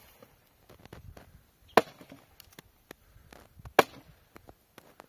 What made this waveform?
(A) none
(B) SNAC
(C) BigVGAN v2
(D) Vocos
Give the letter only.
A